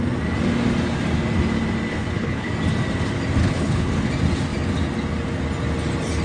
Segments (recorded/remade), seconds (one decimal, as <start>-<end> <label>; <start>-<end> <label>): 0.0-1.9 recorded; 1.9-2.5 remade; 2.5-3.4 recorded; 3.4-4.1 remade; 4.1-6.2 recorded